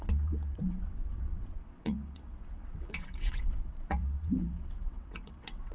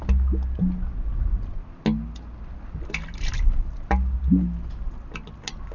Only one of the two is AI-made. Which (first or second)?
first